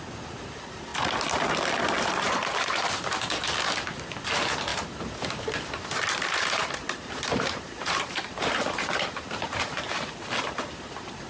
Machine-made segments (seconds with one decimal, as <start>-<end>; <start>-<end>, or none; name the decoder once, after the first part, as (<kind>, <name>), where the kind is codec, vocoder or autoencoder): 2.5-3.4 (vocoder, BigVGAN v2); 4.7-9.9